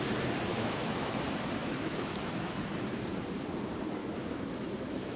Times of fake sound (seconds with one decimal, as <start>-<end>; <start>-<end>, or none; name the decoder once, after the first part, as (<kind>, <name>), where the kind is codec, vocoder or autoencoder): 0.5-1.1 (autoencoder, DAC-VAE); 1.6-2.6; 4.0-5.2